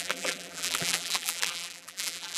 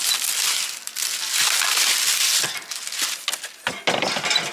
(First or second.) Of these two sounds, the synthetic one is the first